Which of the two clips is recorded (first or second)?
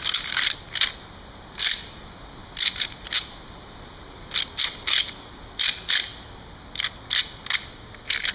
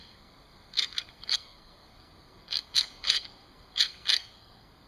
first